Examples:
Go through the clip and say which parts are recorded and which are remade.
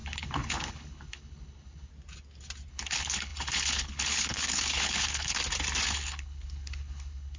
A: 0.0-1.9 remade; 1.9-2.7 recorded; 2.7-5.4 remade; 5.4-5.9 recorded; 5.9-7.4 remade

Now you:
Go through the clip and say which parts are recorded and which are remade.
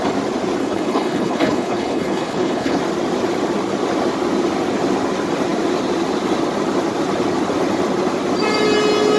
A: 0.0-0.6 recorded; 0.6-2.8 remade; 2.8-9.2 recorded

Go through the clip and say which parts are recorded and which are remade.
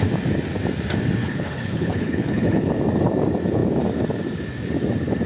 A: 0.0-1.2 recorded; 1.2-2.7 remade; 2.7-5.3 recorded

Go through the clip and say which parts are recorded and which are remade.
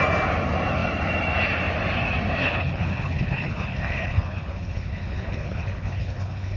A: 0.0-2.4 recorded; 2.4-6.6 remade